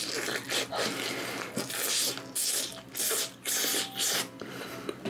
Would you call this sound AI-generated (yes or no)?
no